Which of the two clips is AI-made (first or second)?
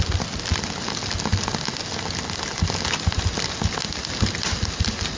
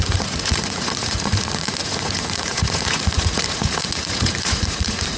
second